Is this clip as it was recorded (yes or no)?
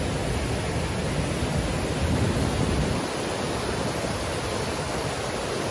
yes